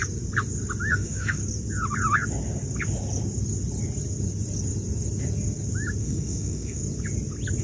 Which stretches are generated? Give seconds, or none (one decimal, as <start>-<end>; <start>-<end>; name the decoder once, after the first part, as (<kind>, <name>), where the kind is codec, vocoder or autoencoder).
0.9-1.4 (autoencoder, DAC-VAE); 6.0-6.8